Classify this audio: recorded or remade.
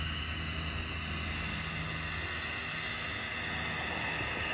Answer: recorded